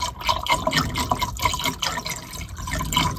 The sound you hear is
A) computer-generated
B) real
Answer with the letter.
B